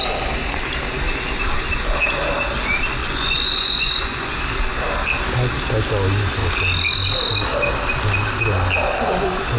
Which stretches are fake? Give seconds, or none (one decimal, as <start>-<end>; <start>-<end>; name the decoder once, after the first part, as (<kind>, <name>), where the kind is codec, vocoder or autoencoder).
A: 3.0-4.4 (vocoder, Vocos)